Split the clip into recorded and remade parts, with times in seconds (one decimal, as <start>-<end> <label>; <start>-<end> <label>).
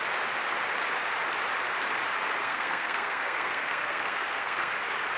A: 0.0-2.4 recorded; 2.4-4.7 remade; 4.7-5.2 recorded